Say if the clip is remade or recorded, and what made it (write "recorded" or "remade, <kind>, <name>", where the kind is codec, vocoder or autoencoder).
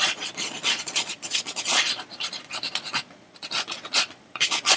remade, vocoder, Vocos